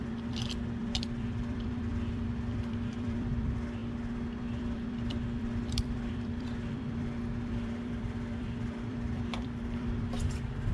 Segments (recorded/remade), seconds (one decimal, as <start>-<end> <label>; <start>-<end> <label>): 0.0-3.8 remade; 3.8-4.4 recorded; 4.4-10.7 remade